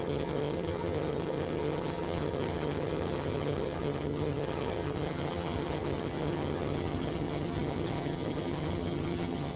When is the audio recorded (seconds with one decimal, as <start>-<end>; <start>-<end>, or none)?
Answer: none